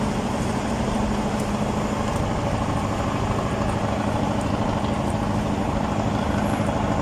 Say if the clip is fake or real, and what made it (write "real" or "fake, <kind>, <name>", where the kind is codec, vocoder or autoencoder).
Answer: real